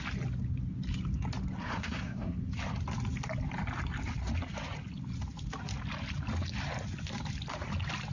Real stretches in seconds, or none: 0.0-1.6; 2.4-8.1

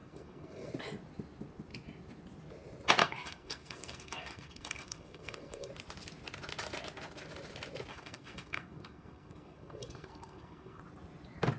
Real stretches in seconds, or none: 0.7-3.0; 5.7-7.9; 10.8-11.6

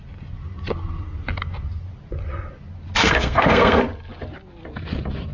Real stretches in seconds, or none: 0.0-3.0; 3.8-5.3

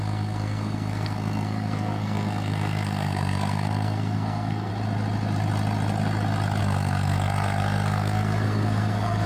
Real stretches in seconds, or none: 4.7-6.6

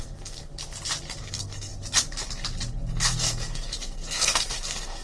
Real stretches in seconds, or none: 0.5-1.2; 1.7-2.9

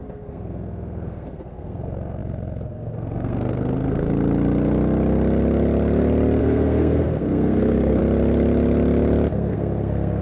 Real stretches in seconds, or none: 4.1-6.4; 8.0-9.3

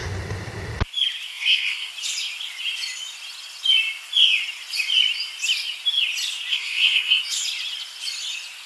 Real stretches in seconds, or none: 0.0-1.3; 1.9-6.5; 7.2-8.7

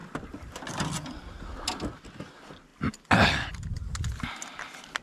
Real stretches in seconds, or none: 0.0-5.0